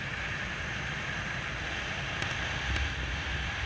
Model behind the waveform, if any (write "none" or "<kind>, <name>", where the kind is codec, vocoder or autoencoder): vocoder, BigVGAN v2